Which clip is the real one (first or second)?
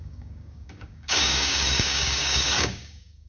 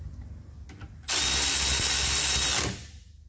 second